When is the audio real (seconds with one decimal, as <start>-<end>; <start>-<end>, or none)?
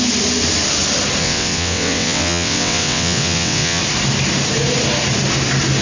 0.0-1.2; 3.8-5.8